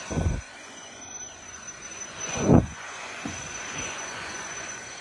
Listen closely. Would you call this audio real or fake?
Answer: fake